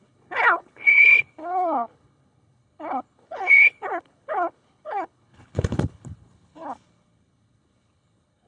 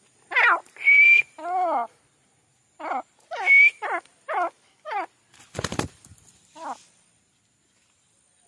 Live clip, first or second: second